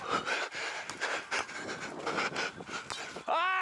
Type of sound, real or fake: real